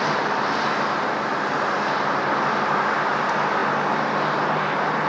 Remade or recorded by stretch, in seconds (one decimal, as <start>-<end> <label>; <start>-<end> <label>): 0.0-5.1 recorded